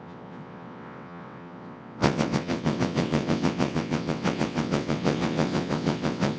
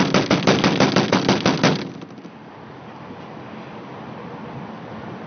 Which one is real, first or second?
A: second